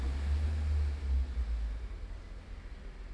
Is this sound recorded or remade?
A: recorded